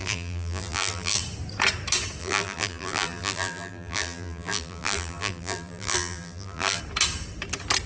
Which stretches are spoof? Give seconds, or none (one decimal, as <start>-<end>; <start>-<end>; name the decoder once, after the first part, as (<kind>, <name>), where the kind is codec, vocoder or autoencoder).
0.0-1.2 (vocoder, BigVGAN v2); 2.2-6.8